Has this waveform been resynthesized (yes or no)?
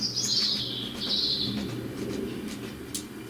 no